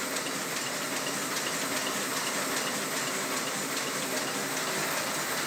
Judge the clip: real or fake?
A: real